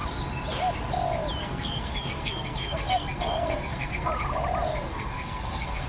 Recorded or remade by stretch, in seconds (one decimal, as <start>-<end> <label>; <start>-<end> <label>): 0.0-1.4 recorded; 1.4-4.1 remade; 4.1-4.9 recorded; 4.9-5.9 remade